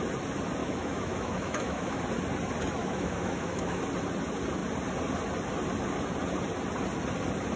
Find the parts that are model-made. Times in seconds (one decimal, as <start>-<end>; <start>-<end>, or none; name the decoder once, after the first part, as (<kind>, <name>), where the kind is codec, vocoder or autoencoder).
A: 0.6-2.0 (autoencoder, DAC-VAE); 2.8-3.8